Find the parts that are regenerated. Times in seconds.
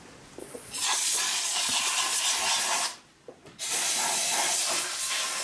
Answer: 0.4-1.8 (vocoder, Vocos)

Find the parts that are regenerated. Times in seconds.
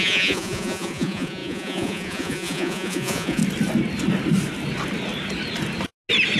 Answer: 0.0-3.4 (vocoder, Vocos)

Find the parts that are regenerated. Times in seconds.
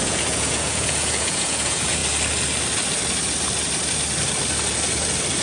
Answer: 0.0-2.0 (vocoder, Vocos)